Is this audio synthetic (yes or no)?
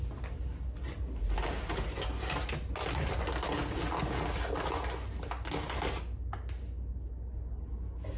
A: no